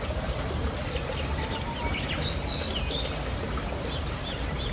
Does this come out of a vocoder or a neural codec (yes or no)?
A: no